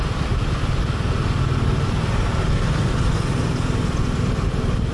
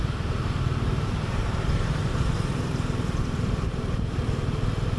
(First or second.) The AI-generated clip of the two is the second